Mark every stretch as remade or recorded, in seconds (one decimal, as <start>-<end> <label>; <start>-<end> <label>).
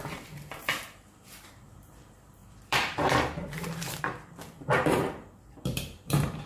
0.0-6.5 remade